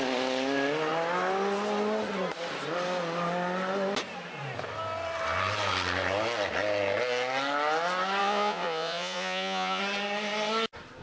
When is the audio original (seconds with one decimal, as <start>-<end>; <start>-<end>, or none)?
0.0-8.2; 9.8-11.0